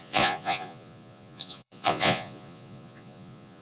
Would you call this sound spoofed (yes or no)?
yes